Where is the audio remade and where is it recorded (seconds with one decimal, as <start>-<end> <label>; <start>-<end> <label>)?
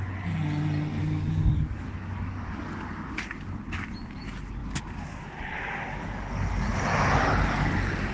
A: 0.0-1.0 recorded; 1.0-3.6 remade; 3.6-5.9 recorded; 5.9-6.7 remade; 6.7-8.1 recorded